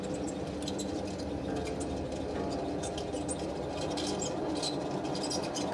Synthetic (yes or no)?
no